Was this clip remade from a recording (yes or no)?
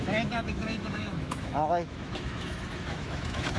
yes